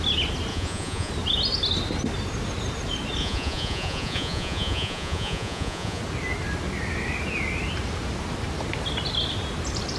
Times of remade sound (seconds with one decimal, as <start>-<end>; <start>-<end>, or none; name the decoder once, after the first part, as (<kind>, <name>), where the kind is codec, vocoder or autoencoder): 0.5-1.1 (vocoder, Vocos); 3.2-6.0